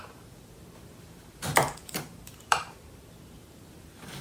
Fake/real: fake